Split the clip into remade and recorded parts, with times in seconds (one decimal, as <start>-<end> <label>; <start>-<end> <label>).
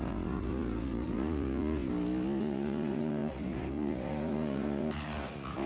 0.0-1.8 remade; 1.8-2.4 recorded; 2.4-5.7 remade